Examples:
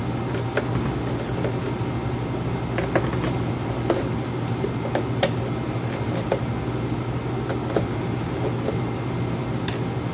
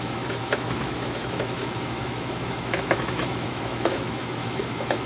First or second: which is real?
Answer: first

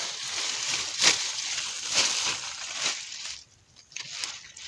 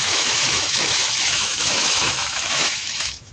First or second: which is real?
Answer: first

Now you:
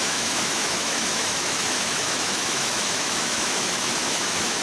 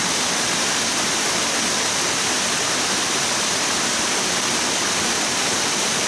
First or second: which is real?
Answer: second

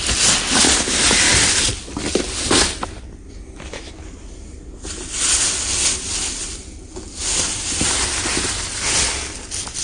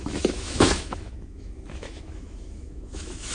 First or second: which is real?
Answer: first